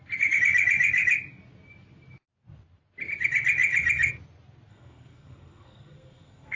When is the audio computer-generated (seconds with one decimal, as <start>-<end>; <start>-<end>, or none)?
4.7-6.6